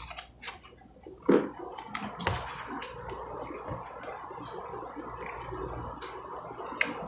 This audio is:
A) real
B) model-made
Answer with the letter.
A